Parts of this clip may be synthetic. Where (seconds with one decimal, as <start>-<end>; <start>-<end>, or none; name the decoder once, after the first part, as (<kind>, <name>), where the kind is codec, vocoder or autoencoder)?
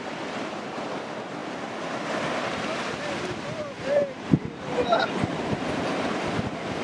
0.0-1.4 (vocoder, BigVGAN v2); 2.0-4.0; 4.6-6.8